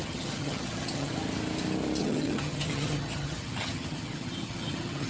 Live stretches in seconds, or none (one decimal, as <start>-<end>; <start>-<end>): 1.1-2.0